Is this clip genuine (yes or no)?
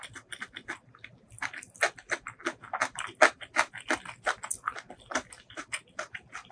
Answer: yes